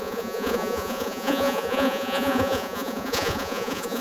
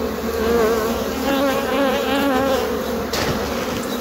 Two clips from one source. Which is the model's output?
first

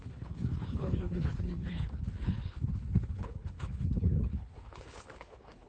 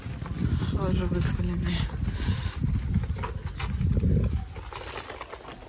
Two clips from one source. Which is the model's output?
first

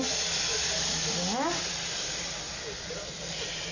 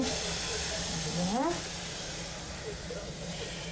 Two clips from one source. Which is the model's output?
second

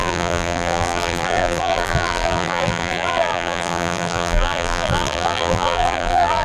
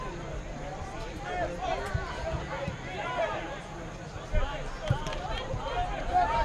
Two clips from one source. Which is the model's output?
first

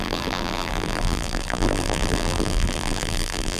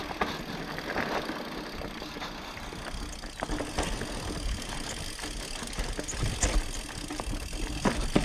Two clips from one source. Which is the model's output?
first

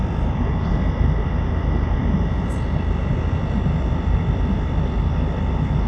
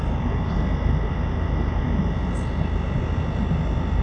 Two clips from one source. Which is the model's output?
first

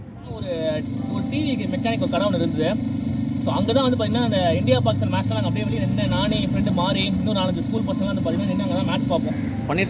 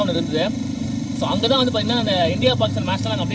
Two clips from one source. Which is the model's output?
second